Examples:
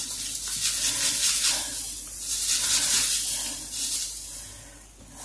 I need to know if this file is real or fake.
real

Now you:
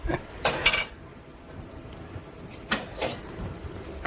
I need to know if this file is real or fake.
real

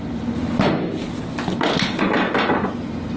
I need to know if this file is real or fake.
real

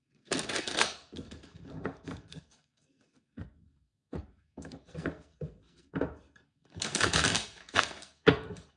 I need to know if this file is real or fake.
fake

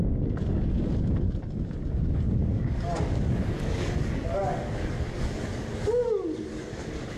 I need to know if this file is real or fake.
fake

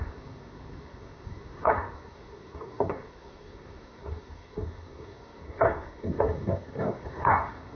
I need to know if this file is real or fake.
fake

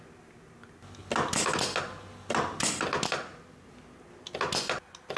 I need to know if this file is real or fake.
real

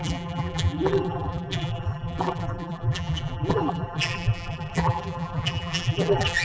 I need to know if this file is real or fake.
fake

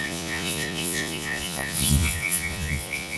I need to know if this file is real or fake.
fake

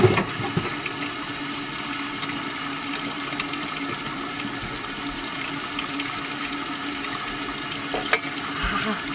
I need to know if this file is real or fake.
real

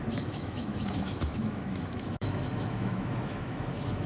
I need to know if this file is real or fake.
fake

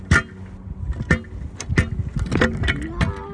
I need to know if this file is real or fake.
real